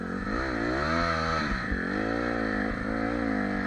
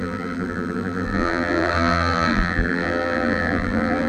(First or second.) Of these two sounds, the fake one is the second